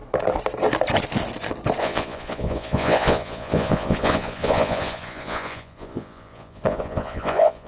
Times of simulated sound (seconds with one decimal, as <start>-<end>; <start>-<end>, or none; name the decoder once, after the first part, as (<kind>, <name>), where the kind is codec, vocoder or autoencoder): 1.8-7.7 (vocoder, Vocos)